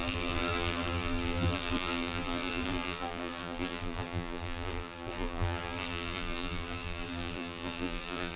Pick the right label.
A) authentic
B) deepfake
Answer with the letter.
B